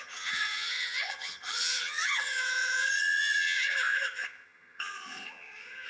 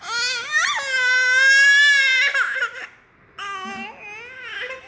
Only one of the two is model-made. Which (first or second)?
first